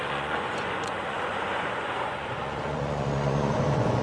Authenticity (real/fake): fake